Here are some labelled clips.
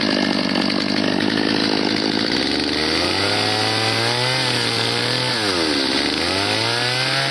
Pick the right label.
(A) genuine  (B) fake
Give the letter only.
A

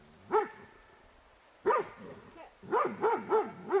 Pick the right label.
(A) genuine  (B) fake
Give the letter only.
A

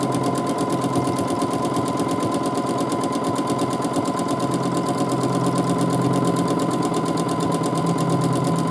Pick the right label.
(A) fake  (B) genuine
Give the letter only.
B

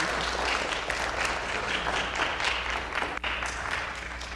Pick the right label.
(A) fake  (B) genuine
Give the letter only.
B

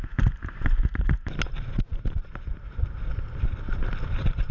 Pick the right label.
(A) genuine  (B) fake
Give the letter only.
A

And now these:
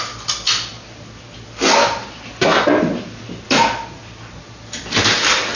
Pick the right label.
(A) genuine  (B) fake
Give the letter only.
A